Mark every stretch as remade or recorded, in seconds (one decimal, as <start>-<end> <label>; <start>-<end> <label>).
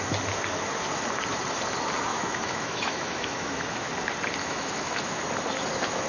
0.0-2.1 recorded; 2.1-3.9 remade; 3.9-4.4 recorded; 4.4-5.2 remade; 5.2-6.1 recorded